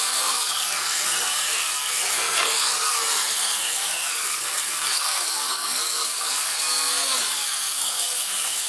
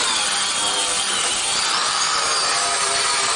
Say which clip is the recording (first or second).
second